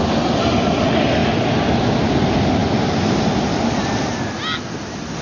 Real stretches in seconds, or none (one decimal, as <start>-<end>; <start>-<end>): 0.0-5.2